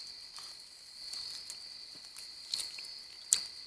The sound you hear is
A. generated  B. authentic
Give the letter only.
B